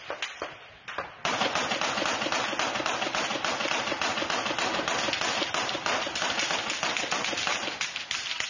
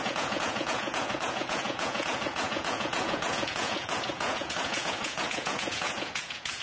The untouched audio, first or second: first